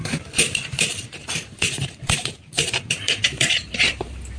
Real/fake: fake